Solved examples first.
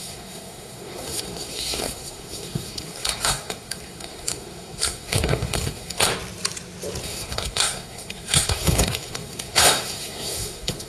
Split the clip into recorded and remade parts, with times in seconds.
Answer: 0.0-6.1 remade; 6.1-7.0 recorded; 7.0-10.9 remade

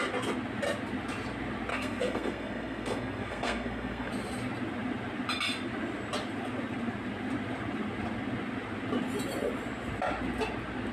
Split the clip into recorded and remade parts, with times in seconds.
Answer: 0.0-1.7 recorded; 1.7-4.1 remade; 4.1-10.9 recorded

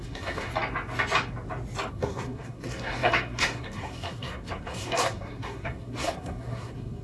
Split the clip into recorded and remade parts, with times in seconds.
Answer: 0.0-0.5 remade; 0.5-1.9 recorded; 1.9-7.0 remade

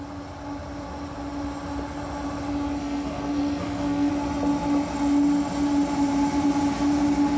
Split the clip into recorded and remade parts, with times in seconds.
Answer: 0.0-2.8 recorded; 2.8-4.1 remade; 4.1-7.4 recorded

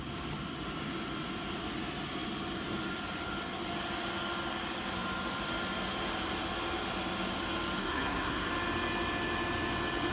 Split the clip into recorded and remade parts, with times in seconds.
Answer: 0.0-7.8 recorded; 7.8-8.5 remade; 8.5-10.1 recorded

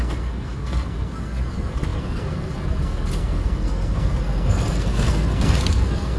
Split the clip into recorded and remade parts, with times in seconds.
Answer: 0.0-6.2 remade

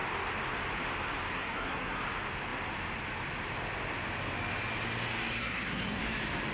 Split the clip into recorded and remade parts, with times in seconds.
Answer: 0.0-1.3 recorded; 1.3-2.0 remade; 2.0-5.4 recorded; 5.4-6.0 remade; 6.0-6.5 recorded